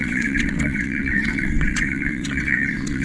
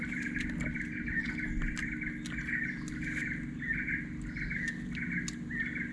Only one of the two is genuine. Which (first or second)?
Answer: second